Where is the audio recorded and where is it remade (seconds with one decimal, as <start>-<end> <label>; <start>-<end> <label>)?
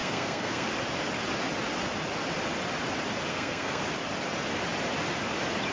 0.0-0.7 remade; 0.7-3.3 recorded; 3.3-3.8 remade; 3.8-5.7 recorded